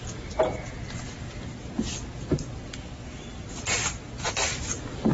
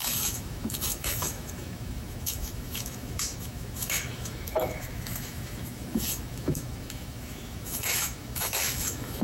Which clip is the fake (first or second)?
second